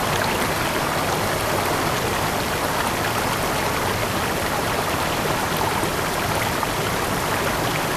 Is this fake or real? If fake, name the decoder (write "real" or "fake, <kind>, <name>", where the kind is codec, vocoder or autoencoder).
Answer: real